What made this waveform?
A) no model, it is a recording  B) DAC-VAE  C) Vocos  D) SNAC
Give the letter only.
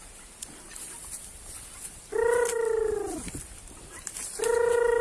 A